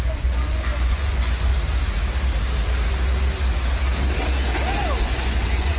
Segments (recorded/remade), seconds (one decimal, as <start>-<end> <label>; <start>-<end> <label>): 0.0-1.5 remade; 1.5-5.0 recorded; 5.0-5.8 remade